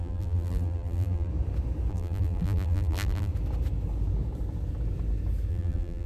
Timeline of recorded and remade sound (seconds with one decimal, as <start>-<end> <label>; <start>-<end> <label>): 0.0-1.3 remade; 1.3-1.9 recorded; 1.9-3.3 remade; 3.3-5.5 recorded; 5.5-6.1 remade